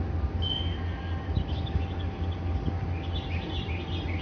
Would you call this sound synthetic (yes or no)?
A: no